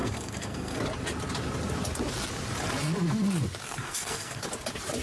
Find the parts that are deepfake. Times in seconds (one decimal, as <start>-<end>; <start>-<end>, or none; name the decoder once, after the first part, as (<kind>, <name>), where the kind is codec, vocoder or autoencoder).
0.0-0.8 (codec, SNAC); 3.6-4.5

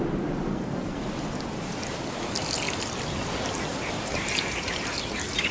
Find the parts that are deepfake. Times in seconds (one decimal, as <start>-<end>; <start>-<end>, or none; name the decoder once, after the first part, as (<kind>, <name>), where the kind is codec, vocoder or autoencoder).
0.5-1.0 (codec, SNAC)